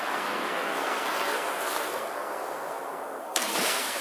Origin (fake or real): fake